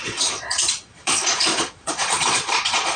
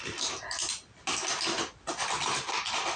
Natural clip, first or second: second